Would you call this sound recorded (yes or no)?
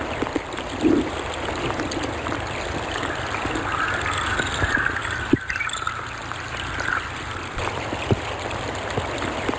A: yes